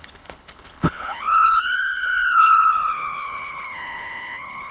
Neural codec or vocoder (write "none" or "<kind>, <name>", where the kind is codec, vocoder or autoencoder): codec, HILCodec